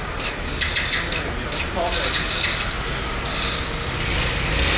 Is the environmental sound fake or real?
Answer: real